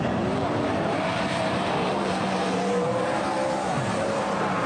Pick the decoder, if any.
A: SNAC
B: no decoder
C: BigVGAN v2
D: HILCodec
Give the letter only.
C